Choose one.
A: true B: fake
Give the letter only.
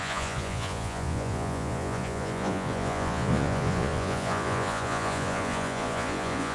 B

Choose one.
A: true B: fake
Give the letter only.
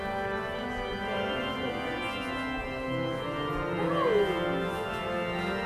A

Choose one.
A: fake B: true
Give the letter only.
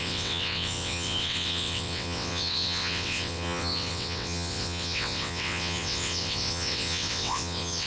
A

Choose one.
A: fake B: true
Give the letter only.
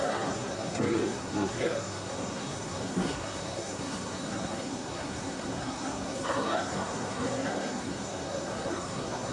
A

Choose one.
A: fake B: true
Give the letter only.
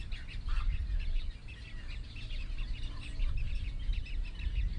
B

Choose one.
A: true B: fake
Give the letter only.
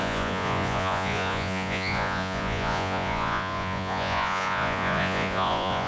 B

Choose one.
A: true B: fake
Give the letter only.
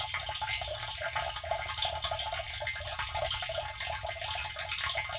A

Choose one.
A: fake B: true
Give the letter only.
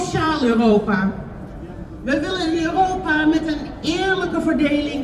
A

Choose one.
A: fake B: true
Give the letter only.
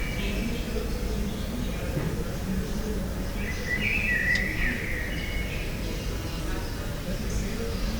B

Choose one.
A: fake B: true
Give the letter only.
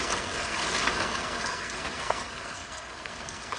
A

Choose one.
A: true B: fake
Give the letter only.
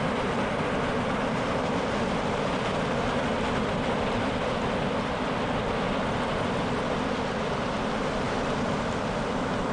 A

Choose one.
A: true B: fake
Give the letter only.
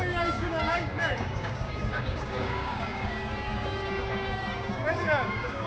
B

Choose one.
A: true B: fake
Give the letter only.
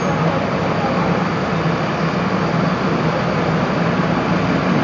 A